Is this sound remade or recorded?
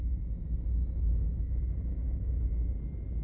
recorded